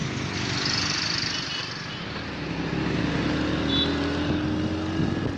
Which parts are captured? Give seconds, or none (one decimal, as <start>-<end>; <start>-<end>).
0.0-5.4